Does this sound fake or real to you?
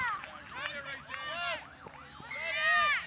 real